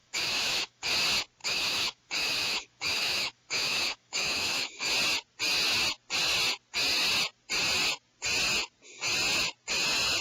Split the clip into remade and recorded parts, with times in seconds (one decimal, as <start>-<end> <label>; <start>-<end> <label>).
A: 0.0-0.9 remade; 0.9-1.4 recorded; 1.4-4.9 remade; 4.9-10.2 recorded

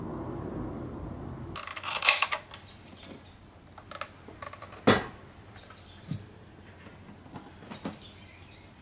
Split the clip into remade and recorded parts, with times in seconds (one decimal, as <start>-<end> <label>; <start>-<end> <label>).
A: 0.0-1.7 recorded; 1.7-2.3 remade; 2.3-8.8 recorded

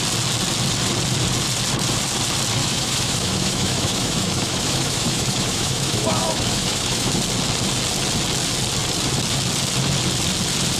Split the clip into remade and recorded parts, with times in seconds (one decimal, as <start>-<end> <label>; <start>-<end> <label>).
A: 0.0-2.6 recorded; 2.6-7.1 remade; 7.1-10.8 recorded

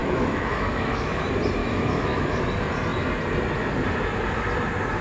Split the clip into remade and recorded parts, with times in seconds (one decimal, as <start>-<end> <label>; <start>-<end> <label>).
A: 0.0-1.2 remade; 1.2-1.6 recorded; 1.6-2.4 remade; 2.4-5.0 recorded

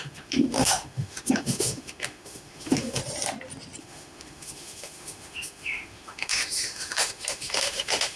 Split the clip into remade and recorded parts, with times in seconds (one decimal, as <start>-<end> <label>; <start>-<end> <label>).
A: 0.0-3.0 remade; 3.0-3.8 recorded; 3.8-8.2 remade